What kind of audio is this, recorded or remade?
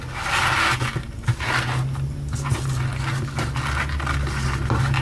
recorded